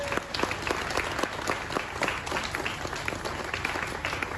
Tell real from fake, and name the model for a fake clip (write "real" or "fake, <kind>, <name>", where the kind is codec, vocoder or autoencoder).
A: real